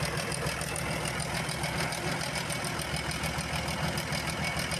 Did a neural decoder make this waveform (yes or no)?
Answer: no